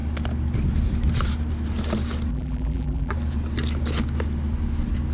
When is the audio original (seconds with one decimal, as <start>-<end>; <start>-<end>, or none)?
0.0-2.3; 3.1-5.1